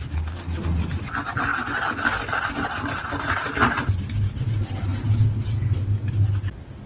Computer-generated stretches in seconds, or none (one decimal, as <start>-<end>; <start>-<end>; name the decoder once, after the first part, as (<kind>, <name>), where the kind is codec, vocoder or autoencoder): none